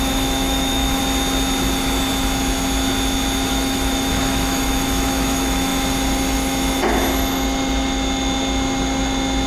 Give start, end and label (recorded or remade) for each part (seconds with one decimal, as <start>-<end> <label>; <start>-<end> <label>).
0.0-1.0 remade; 1.0-3.5 recorded; 3.5-5.7 remade; 5.7-9.5 recorded